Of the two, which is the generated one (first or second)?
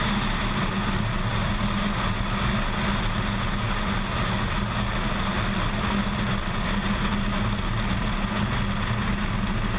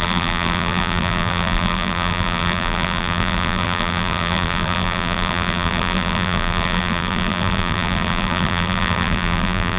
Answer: second